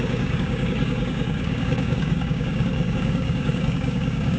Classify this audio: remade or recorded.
remade